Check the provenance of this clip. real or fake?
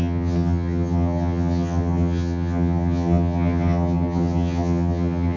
fake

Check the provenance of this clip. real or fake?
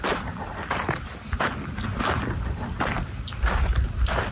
real